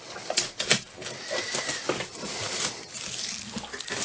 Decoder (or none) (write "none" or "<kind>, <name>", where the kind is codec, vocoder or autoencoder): none